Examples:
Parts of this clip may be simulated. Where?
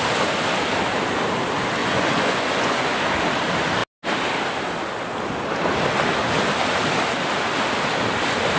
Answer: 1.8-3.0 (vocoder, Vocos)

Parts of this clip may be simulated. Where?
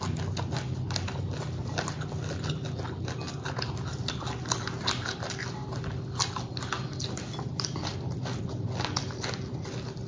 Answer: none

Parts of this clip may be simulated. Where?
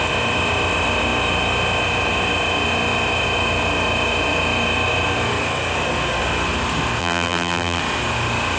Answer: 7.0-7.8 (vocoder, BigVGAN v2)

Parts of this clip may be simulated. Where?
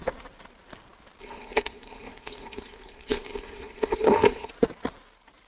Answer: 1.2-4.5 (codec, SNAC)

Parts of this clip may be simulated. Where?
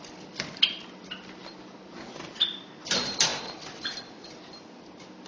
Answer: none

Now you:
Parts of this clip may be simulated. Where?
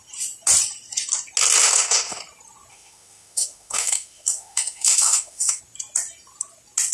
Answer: 1.6-2.2 (autoencoder, DAC-VAE); 2.7-5.6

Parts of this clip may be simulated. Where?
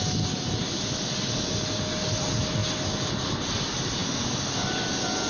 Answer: none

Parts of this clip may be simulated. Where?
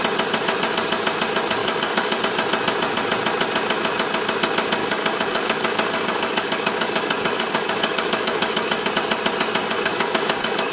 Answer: 1.6-2.2 (codec, DAC); 4.8-8.9; 9.6-10.7